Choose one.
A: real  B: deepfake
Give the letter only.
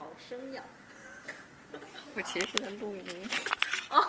A